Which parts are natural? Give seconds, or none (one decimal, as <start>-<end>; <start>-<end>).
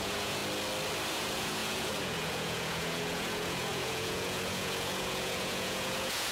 0.4-1.1